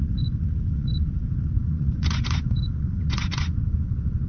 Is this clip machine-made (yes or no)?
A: yes